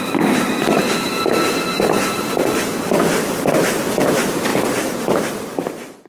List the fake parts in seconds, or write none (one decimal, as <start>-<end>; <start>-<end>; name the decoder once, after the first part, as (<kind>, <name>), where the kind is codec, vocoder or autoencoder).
4.5-5.2 (vocoder, BigVGAN v2)